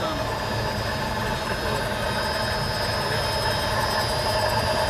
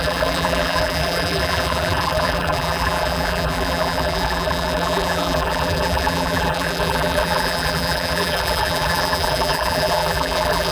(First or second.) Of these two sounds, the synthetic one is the second